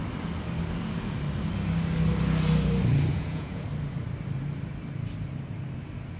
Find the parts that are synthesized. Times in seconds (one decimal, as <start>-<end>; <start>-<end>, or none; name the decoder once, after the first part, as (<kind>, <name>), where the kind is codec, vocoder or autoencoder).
3.1-3.6 (vocoder, Vocos)